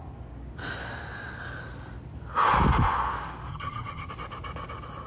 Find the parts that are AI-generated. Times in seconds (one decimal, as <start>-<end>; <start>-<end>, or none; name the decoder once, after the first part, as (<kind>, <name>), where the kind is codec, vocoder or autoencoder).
3.5-4.1 (vocoder, HiFi-GAN)